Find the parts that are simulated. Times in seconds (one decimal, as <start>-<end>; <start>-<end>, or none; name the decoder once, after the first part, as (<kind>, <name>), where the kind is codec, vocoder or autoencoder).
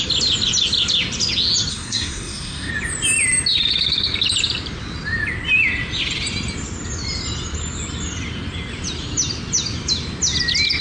1.7-2.7 (codec, SNAC)